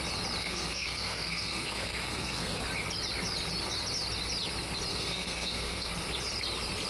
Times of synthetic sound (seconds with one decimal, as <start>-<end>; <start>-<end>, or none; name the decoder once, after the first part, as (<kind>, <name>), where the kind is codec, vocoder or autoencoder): 0.4-2.6 (codec, SNAC); 4.9-5.9